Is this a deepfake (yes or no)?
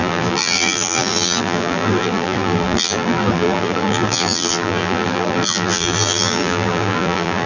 yes